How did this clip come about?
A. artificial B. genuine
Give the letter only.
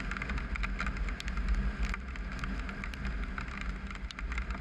B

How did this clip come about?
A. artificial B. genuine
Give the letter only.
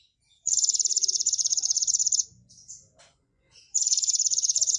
A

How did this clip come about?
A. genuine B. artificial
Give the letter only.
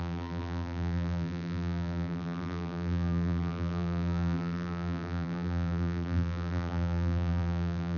B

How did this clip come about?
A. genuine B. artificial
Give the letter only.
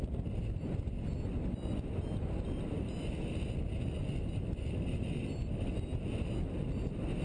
A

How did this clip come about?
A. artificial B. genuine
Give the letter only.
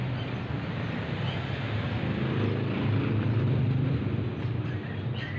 B